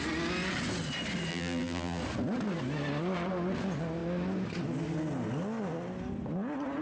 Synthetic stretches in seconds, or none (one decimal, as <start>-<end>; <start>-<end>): 1.3-2.0